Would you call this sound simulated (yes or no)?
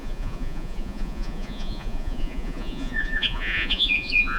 yes